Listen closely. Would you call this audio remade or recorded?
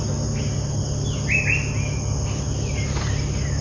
recorded